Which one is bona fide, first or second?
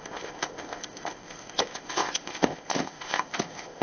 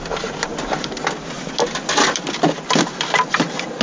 second